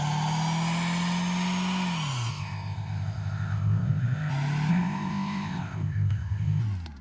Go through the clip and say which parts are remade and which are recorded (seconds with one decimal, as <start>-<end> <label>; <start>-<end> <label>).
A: 0.0-2.3 recorded; 2.3-4.3 remade; 4.3-4.7 recorded; 4.7-6.6 remade; 6.6-7.0 recorded